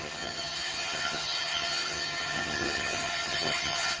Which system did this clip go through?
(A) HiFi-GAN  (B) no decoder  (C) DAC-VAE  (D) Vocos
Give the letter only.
A